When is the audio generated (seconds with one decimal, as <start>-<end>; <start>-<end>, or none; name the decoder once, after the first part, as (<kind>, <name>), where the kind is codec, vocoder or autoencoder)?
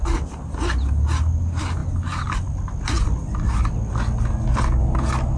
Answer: none